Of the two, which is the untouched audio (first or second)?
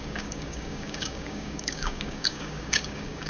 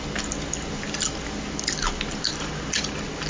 second